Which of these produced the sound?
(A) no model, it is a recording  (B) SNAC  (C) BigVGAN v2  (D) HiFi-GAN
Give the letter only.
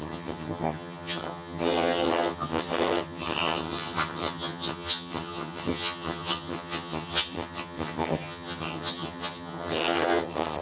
D